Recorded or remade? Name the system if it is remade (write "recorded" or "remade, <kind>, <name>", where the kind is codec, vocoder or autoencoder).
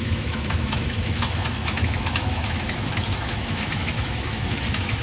remade, autoencoder, DAC-VAE